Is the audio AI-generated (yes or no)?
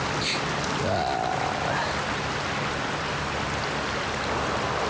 no